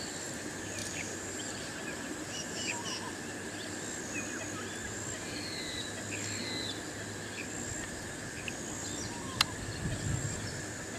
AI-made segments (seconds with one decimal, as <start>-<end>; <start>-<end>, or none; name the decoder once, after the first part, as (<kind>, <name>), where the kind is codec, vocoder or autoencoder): 0.8-2.9 (vocoder, BigVGAN v2)